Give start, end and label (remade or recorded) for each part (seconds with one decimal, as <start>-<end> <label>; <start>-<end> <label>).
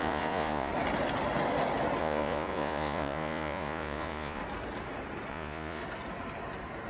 0.0-0.7 remade; 0.7-2.0 recorded; 2.0-4.4 remade; 4.4-5.3 recorded; 5.3-5.8 remade; 5.8-6.9 recorded